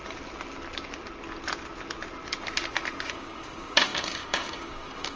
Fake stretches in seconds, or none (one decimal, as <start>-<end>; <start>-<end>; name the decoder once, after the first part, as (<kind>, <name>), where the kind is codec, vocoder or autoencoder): 3.1-5.2 (codec, DAC)